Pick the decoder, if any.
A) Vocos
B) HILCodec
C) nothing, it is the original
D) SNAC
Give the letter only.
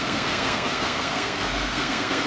D